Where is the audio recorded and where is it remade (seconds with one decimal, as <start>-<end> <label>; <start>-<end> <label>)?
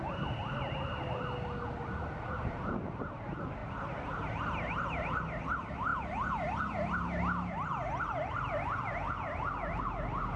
0.0-10.4 recorded